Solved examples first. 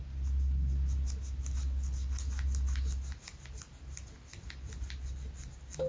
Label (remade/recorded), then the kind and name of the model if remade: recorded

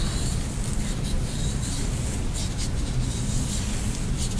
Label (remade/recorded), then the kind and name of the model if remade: recorded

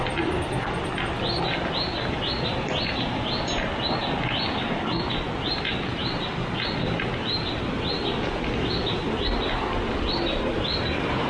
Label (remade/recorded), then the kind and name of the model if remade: recorded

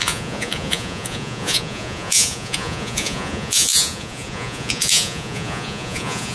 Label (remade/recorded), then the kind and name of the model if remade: remade, vocoder, Vocos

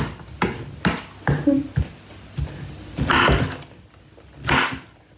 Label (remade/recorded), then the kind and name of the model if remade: recorded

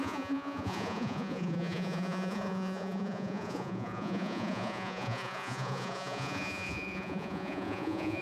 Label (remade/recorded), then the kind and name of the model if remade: remade, vocoder, Vocos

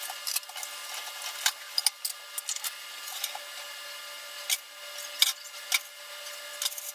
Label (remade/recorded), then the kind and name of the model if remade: recorded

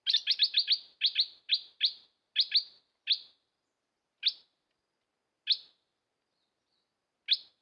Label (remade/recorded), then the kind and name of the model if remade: recorded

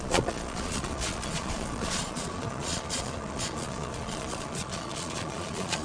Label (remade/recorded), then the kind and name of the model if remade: remade, vocoder, Vocos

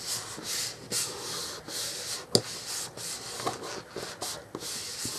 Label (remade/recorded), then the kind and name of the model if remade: recorded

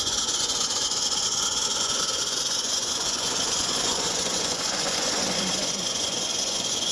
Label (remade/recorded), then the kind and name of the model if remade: remade, vocoder, Vocos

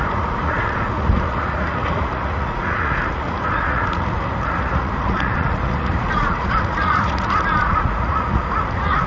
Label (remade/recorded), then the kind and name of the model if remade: remade, vocoder, Vocos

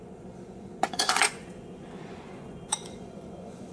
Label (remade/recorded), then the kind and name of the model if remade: remade, vocoder, Vocos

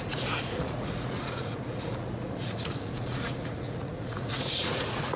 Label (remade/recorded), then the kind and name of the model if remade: remade, vocoder, Vocos